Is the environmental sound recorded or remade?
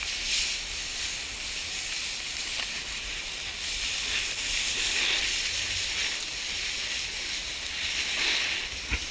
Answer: recorded